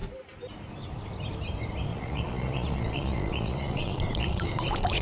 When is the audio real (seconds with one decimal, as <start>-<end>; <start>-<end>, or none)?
0.0-1.9